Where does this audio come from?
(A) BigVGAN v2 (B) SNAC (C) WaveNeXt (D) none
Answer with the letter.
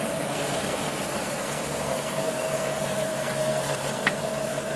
B